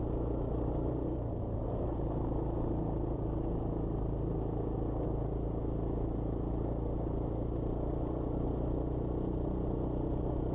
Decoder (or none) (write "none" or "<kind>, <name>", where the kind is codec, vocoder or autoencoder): none